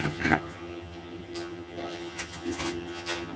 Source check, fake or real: fake